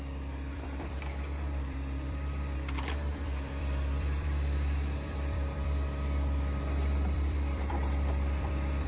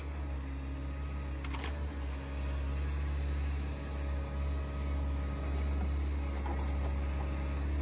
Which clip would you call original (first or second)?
second